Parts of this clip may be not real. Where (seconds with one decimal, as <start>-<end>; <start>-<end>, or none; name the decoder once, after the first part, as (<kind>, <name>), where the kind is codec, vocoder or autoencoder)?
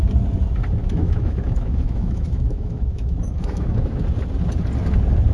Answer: 0.8-4.0 (autoencoder, DAC-VAE)